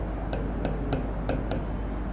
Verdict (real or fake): real